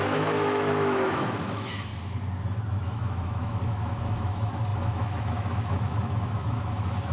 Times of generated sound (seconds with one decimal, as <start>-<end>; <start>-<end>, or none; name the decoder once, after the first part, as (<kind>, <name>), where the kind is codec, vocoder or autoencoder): 0.0-1.9 (autoencoder, DAC-VAE); 2.8-7.1